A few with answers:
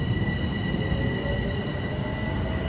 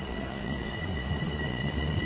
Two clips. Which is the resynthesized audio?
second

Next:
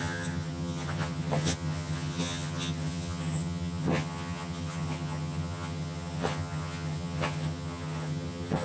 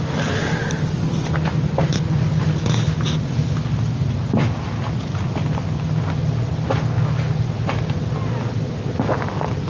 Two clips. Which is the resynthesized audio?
first